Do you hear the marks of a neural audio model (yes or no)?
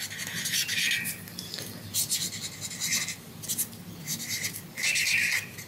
no